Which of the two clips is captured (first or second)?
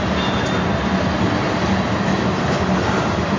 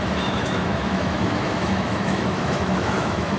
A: first